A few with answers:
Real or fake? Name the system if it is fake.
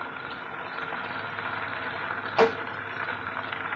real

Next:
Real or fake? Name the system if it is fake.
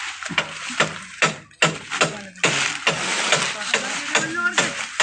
real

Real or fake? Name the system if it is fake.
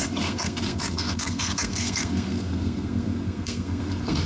fake, codec, SNAC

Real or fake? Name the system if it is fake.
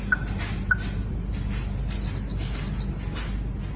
real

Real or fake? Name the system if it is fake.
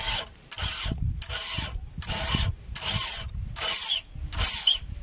real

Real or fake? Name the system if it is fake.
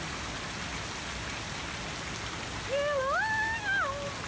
real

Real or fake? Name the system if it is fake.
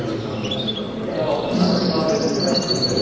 real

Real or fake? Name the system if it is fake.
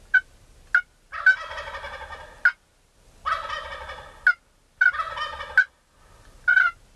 real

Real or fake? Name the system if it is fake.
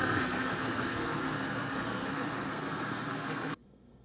fake, codec, SNAC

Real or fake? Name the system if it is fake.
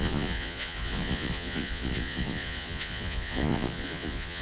fake, vocoder, Vocos